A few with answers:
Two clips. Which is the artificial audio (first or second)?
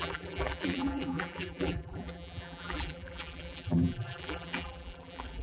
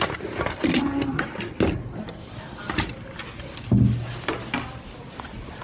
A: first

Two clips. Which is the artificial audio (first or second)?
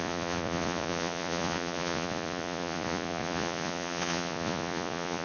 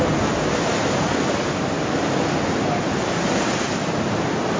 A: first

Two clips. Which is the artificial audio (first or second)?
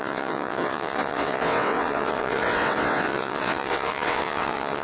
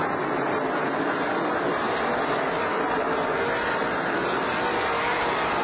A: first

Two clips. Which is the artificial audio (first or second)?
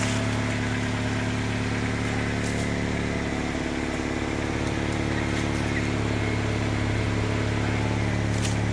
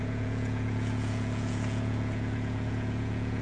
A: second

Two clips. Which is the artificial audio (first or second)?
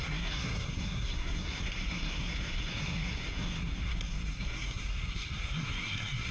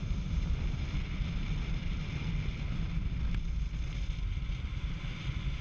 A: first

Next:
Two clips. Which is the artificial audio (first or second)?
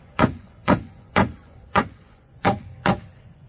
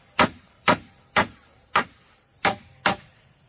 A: first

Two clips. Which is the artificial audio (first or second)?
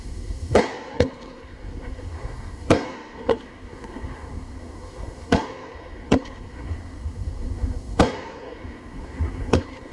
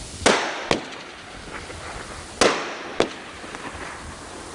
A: first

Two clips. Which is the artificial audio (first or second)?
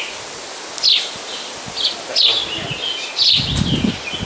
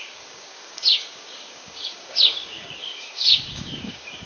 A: second